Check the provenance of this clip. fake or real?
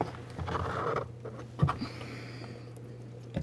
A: real